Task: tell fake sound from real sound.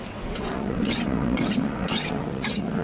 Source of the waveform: fake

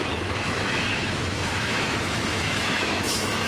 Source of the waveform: fake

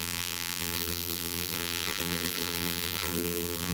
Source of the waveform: fake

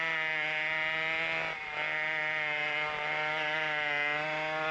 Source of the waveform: real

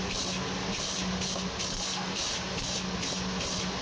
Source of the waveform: real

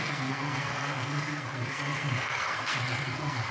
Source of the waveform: fake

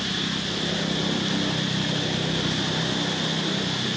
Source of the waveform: real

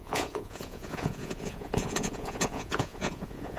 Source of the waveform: fake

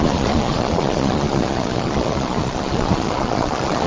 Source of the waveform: fake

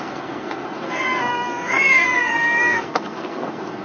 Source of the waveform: fake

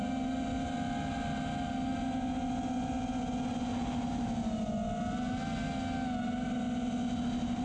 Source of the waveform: real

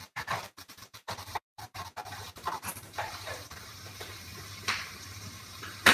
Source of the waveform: fake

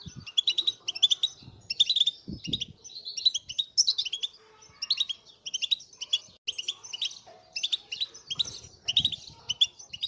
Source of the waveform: real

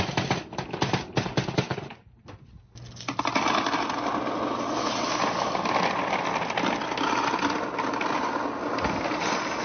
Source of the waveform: real